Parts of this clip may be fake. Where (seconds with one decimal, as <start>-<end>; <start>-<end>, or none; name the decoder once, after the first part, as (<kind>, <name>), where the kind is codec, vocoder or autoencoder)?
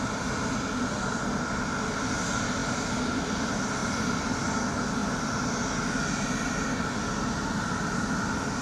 3.8-4.6 (vocoder, BigVGAN v2)